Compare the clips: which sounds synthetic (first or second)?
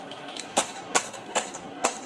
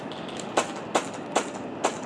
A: first